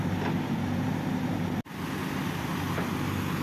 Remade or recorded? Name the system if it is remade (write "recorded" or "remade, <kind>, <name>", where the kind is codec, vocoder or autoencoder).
recorded